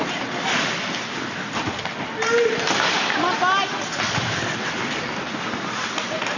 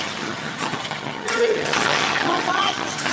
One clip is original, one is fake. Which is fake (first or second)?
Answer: second